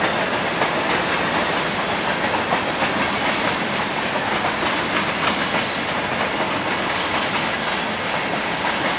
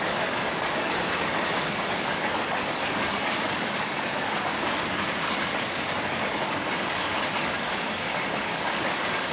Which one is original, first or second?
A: first